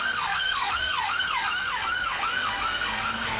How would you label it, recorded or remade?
remade